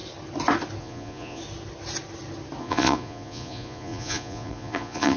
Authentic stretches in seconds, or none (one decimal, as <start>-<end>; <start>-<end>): 0.0-0.8; 1.4-2.6